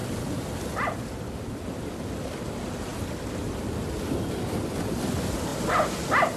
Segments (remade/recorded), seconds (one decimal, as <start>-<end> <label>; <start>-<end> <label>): 0.0-6.4 recorded